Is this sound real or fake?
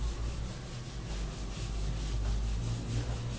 real